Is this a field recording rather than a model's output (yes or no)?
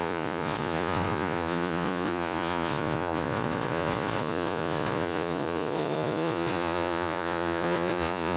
no